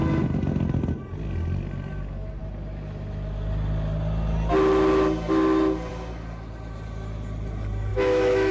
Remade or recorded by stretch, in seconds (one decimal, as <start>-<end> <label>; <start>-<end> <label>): 0.0-7.9 recorded; 7.9-8.5 remade